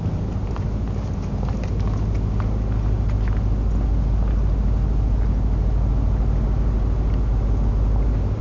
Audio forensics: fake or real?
real